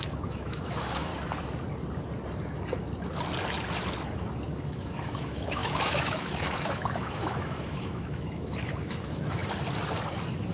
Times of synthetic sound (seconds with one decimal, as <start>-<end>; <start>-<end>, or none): 0.0-1.1; 4.5-9.4